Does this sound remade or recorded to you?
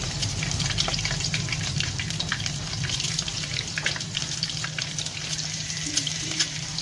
remade